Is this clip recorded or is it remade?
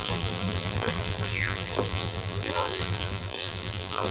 remade